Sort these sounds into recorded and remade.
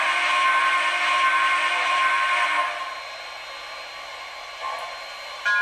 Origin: recorded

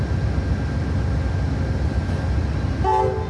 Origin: recorded